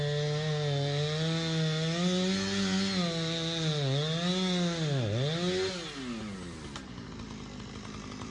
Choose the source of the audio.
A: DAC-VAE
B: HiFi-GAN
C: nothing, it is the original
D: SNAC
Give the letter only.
C